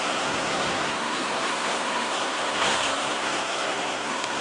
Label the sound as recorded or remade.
remade